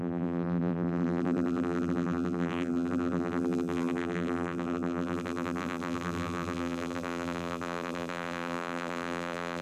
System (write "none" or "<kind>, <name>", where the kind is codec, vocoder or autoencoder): vocoder, BigVGAN v2